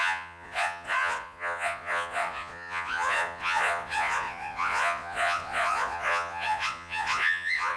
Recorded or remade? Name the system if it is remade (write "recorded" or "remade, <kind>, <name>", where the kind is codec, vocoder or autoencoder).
remade, vocoder, Vocos